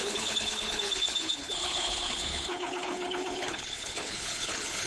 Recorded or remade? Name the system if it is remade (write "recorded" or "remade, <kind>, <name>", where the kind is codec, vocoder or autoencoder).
remade, codec, HILCodec